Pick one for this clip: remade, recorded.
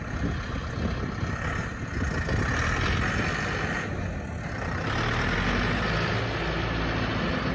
recorded